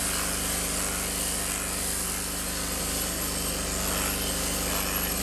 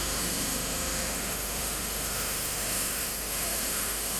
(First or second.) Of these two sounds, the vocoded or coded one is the second